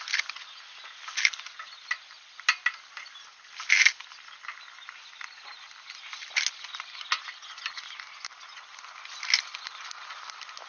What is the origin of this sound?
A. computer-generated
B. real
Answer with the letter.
B